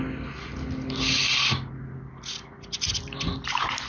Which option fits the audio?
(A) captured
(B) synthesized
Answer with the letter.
A